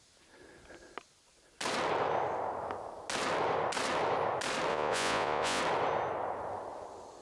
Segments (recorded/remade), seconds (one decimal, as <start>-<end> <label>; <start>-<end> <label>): 0.0-4.7 recorded; 4.7-5.6 remade; 5.6-7.2 recorded